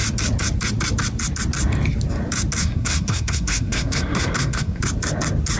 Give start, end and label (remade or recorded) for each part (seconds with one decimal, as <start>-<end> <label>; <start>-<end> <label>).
0.0-2.6 recorded; 2.6-4.8 remade; 4.8-5.6 recorded

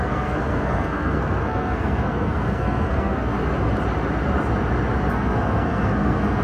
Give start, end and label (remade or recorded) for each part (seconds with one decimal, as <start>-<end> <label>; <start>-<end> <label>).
0.0-3.3 remade; 3.3-5.1 recorded; 5.1-6.4 remade

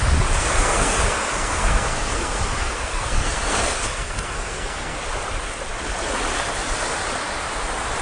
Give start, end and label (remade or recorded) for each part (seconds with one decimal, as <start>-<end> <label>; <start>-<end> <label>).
0.0-0.4 recorded; 0.4-5.0 remade; 5.0-8.0 recorded